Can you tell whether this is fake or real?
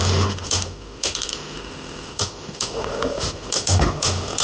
fake